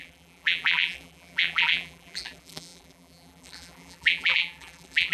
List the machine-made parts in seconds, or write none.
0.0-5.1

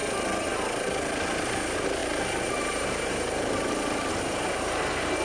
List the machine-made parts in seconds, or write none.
2.0-4.1

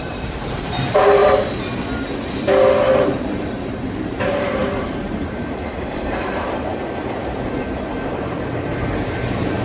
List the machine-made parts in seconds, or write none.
0.0-1.2; 2.9-6.7; 8.4-9.6

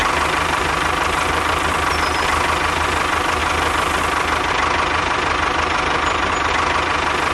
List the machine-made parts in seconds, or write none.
0.0-1.5

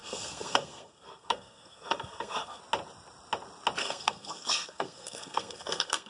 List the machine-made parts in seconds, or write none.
0.0-2.6; 3.8-6.1